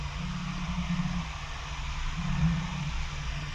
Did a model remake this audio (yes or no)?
no